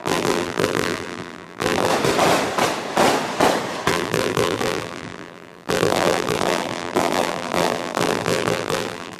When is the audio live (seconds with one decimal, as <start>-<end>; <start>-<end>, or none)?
1.9-3.9